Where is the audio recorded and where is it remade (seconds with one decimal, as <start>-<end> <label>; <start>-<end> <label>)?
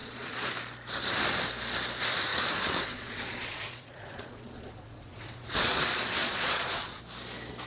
0.0-0.5 remade; 0.5-2.3 recorded; 2.3-5.8 remade; 5.8-6.2 recorded; 6.2-7.0 remade; 7.0-7.7 recorded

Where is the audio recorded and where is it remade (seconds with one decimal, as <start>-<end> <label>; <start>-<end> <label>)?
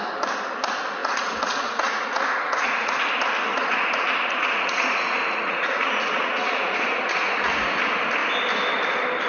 0.0-1.0 recorded; 1.0-3.1 remade; 3.1-3.5 recorded; 3.5-7.8 remade; 7.8-9.3 recorded